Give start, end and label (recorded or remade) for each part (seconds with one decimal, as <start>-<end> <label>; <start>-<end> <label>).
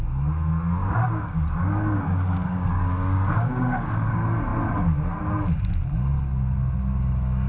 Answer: 0.0-0.8 recorded; 0.8-4.1 remade; 4.1-7.5 recorded